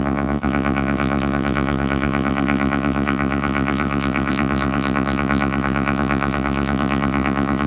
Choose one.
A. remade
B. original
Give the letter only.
A